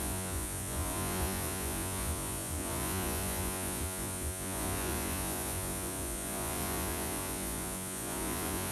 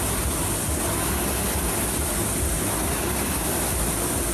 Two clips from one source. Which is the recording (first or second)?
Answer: second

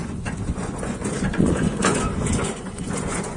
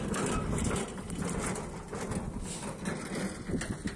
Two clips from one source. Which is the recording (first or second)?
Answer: second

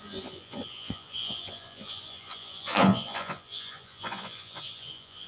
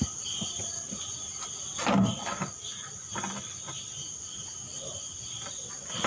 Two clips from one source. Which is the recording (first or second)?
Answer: second